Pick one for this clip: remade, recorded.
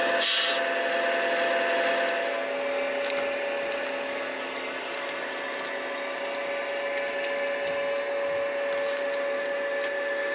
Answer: recorded